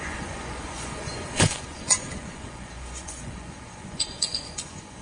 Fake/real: fake